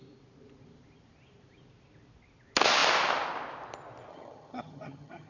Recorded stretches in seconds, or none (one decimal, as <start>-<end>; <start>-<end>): 0.0-4.1